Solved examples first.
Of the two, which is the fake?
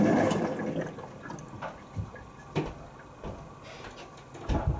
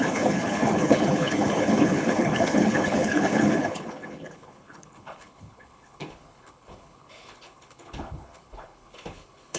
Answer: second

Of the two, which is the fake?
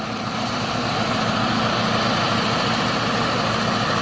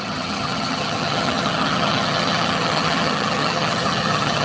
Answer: second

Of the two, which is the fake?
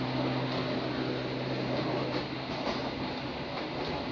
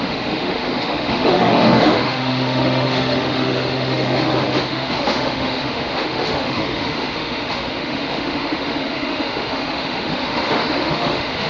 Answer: second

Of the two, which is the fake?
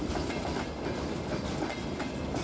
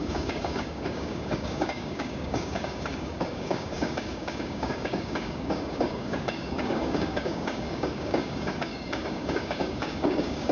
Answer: second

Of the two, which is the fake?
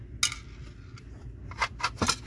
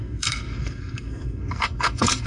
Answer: second